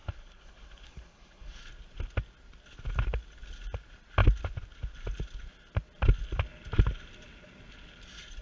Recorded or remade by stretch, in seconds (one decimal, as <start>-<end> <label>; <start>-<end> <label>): 0.0-1.6 remade; 1.6-8.4 recorded